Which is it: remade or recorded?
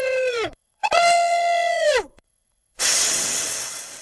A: remade